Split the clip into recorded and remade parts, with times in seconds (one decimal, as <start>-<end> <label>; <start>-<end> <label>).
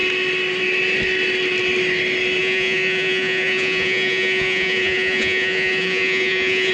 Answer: 0.0-2.4 recorded; 2.4-6.7 remade